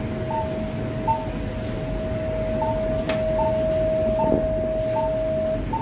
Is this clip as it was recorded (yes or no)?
yes